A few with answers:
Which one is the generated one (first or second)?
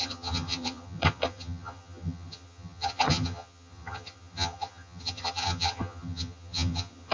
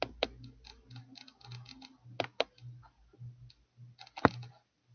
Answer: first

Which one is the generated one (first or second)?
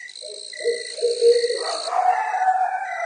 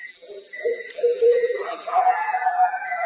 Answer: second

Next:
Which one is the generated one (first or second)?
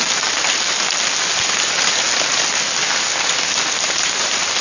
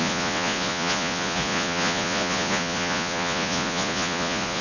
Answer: second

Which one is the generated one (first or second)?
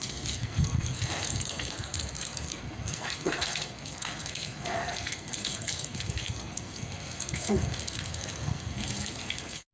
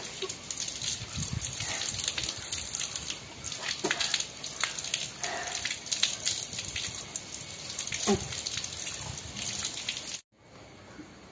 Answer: first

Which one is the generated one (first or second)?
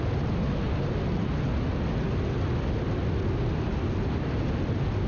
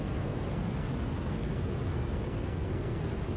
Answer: second